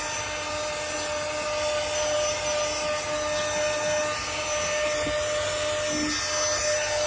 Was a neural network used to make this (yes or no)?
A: no